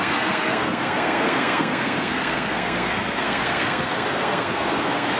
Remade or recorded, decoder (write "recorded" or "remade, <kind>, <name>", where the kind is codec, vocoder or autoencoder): remade, codec, SNAC